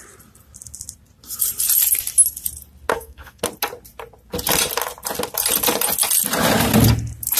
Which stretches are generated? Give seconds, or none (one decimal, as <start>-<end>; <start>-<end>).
2.9-3.4